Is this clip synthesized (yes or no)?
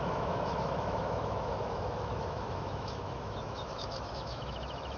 yes